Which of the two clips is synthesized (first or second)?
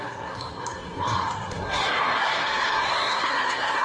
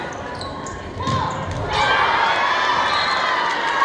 first